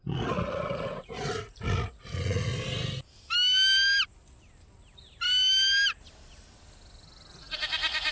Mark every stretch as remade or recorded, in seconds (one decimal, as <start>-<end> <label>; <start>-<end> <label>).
0.0-2.5 remade; 2.5-7.4 recorded; 7.4-8.1 remade